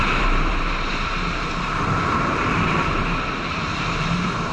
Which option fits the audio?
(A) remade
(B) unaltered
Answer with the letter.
A